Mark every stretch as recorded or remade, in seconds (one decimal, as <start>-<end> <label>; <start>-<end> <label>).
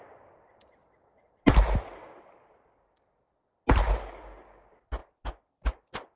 0.0-6.2 recorded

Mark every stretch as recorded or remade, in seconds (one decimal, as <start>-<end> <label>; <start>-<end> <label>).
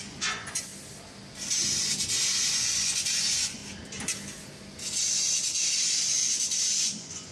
0.0-0.7 remade; 0.7-2.5 recorded; 2.5-3.6 remade; 3.6-6.8 recorded; 6.8-7.3 remade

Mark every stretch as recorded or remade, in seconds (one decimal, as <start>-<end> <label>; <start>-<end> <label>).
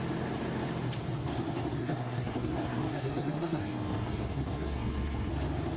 0.0-1.8 recorded; 1.8-5.3 remade; 5.3-5.8 recorded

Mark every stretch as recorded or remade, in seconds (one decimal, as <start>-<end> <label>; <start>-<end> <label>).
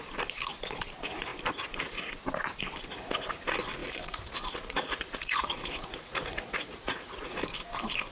0.0-3.8 recorded; 3.8-7.4 remade; 7.4-8.1 recorded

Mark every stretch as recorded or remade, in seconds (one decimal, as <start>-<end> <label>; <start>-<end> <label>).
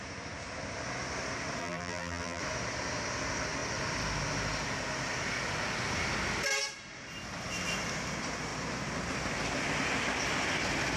0.0-1.6 recorded; 1.6-2.4 remade; 2.4-11.0 recorded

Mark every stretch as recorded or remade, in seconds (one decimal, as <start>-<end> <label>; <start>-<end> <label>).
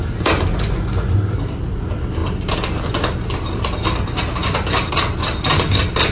0.0-0.5 recorded; 0.5-1.2 remade; 1.2-6.1 recorded